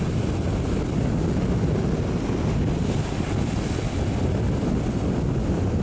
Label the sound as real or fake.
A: real